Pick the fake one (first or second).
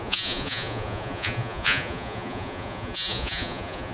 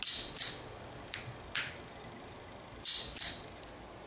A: first